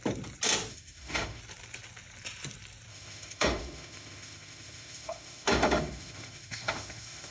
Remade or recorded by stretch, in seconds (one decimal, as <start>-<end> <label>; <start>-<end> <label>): 0.0-0.7 recorded; 0.7-1.4 remade; 1.4-2.9 recorded; 2.9-7.3 remade